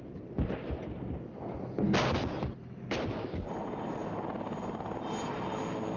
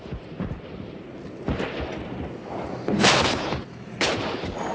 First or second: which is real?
first